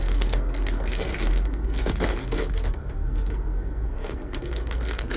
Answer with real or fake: fake